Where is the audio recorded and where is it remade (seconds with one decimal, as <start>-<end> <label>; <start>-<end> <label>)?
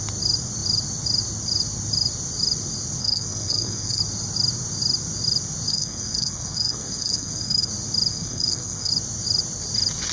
0.0-3.0 recorded; 3.0-4.0 remade; 4.0-5.7 recorded; 5.7-7.7 remade; 7.7-8.1 recorded; 8.1-8.9 remade; 8.9-10.1 recorded